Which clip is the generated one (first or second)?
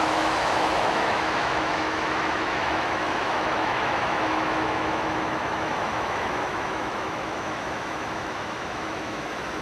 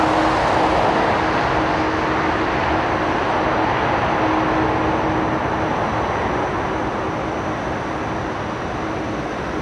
first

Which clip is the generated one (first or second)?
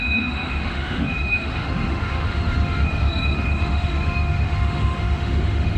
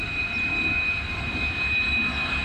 first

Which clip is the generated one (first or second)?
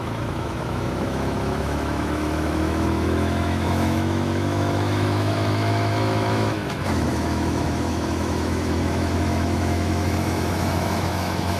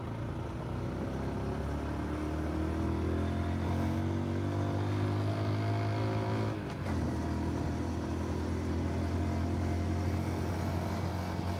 first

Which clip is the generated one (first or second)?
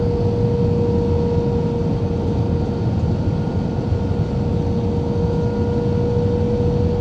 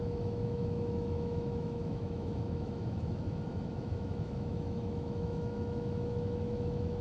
second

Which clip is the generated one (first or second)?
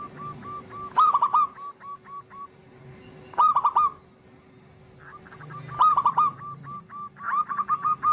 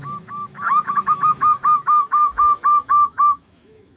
second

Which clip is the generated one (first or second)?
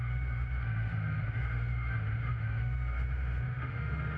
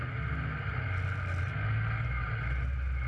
first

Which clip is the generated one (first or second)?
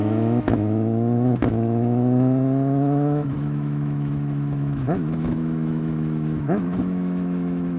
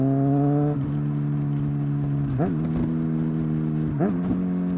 first